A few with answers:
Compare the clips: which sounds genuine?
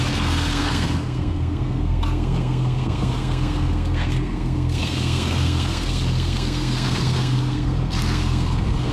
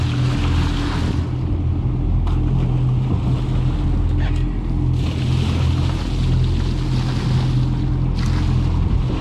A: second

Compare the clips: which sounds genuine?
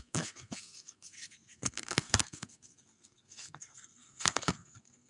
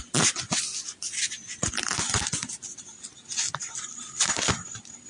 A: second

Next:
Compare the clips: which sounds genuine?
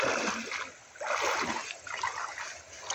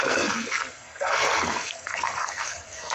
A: first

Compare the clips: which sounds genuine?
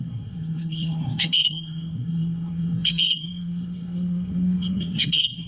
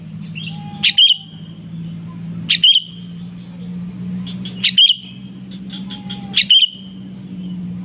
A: second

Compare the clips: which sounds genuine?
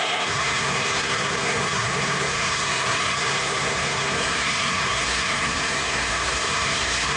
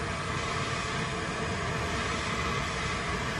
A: second